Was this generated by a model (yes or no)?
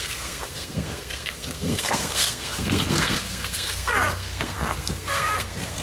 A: yes